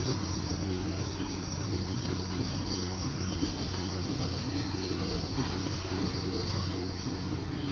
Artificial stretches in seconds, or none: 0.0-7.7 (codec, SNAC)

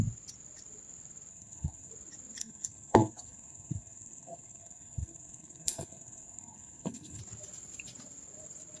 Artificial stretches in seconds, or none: 1.3-1.9 (codec, SNAC); 2.4-7.2

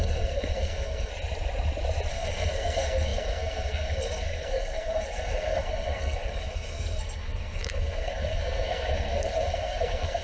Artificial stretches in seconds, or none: 0.0-1.1 (codec, SNAC); 2.1-10.2